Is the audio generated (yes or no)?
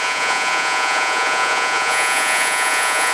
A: yes